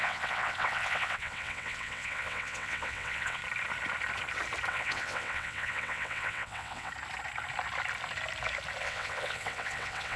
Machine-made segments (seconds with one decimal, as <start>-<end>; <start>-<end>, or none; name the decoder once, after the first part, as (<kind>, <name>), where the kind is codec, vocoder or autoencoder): 0.0-3.4 (vocoder, WaveNeXt); 4.7-6.9; 8.8-10.2